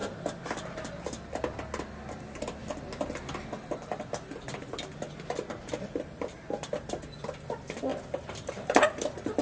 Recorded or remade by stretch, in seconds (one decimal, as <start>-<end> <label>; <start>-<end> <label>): 0.0-2.2 recorded; 2.2-2.6 remade; 2.6-5.6 recorded; 5.6-7.9 remade; 7.9-8.5 recorded; 8.5-9.4 remade

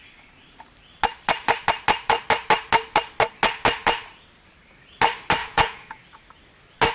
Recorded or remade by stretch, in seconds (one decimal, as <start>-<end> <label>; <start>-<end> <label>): 0.0-5.4 recorded; 5.4-6.0 remade; 6.0-6.9 recorded

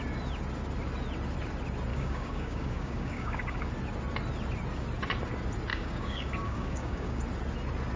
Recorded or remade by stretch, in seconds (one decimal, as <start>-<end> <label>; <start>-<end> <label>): 0.0-1.9 recorded; 1.9-3.7 remade; 3.7-5.7 recorded; 5.7-7.2 remade; 7.2-8.0 recorded

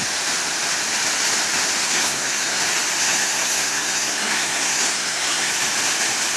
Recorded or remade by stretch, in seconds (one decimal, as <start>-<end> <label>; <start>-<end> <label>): 0.0-1.8 recorded; 1.8-2.6 remade; 2.6-3.0 recorded; 3.0-5.5 remade; 5.5-6.4 recorded